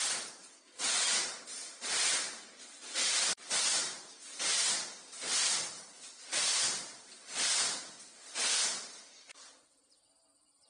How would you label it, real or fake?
fake